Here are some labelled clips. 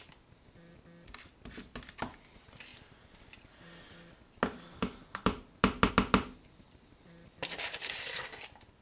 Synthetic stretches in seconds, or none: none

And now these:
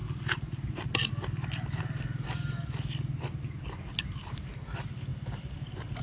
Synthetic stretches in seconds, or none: none